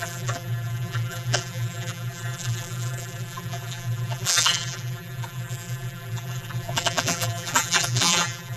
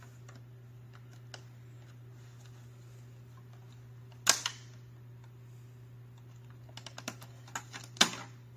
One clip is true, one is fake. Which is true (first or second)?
second